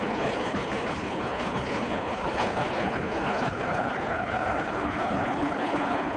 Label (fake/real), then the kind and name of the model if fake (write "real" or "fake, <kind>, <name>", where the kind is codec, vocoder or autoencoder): fake, codec, HILCodec